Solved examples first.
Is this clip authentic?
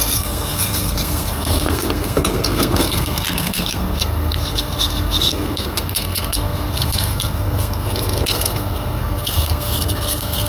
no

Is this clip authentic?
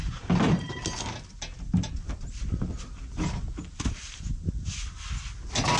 yes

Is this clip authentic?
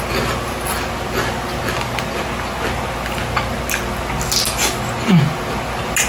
yes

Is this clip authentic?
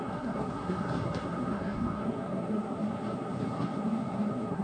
no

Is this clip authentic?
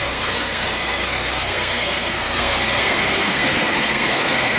no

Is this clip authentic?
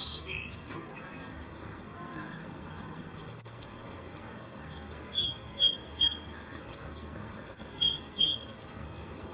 no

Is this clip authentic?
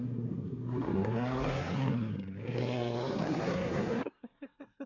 no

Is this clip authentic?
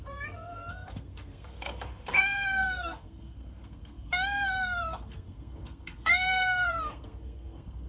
no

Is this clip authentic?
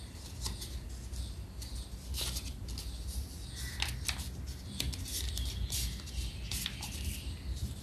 yes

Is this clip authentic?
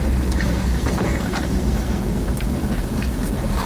no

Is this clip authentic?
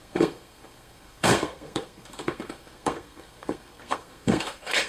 no